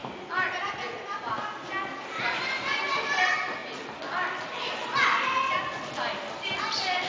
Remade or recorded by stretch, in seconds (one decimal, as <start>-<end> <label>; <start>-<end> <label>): 0.0-7.1 recorded